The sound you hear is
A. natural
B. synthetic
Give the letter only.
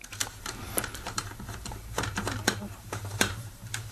B